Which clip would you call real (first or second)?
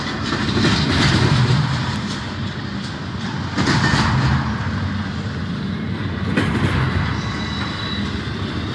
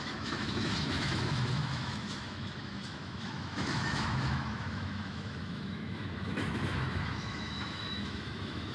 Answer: first